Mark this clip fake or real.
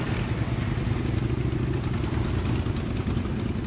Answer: real